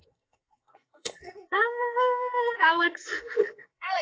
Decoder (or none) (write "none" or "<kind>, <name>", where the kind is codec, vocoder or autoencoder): codec, SNAC